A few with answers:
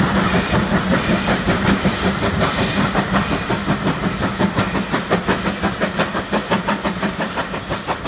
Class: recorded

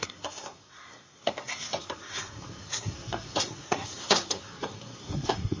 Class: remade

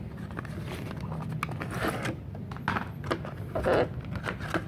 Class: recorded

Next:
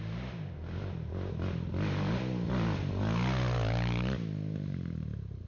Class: recorded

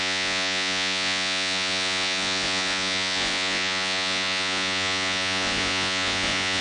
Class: remade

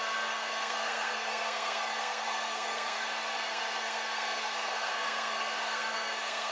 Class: remade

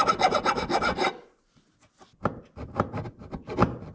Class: recorded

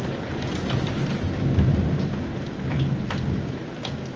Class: recorded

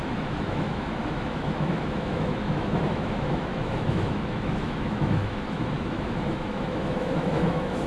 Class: remade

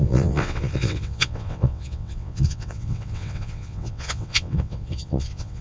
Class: remade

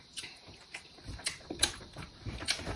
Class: recorded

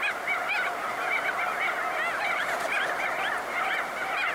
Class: recorded